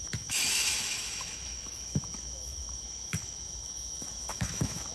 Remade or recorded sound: remade